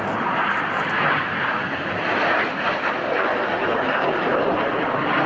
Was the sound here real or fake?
real